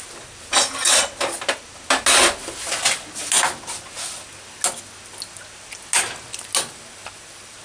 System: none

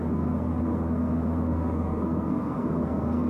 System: codec, SNAC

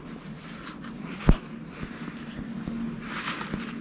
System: none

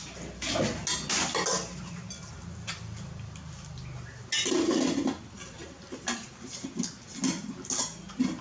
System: none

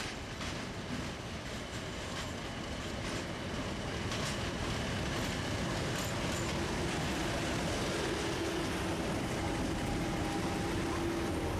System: none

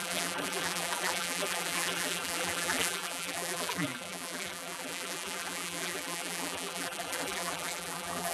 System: vocoder, BigVGAN v2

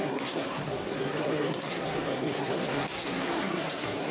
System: codec, SNAC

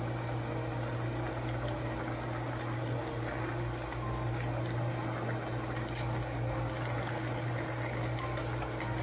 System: none